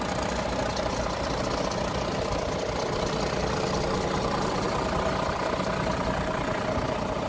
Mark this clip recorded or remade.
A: recorded